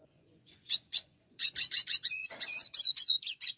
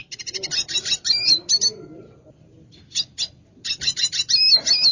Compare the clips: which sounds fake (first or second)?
first